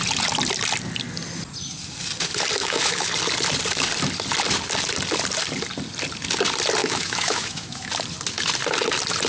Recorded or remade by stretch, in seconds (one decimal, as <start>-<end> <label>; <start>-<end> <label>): 0.0-2.6 recorded; 2.6-3.1 remade; 3.1-6.8 recorded; 6.8-7.9 remade; 7.9-9.3 recorded